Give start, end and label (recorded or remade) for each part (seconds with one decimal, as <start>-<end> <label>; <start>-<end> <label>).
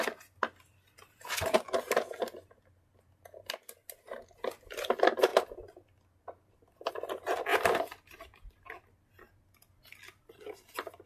0.0-11.1 recorded